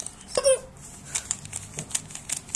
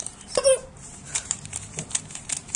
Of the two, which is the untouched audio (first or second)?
first